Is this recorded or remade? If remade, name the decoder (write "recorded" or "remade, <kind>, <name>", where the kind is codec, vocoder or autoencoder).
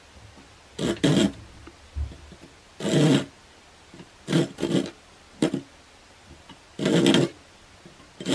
recorded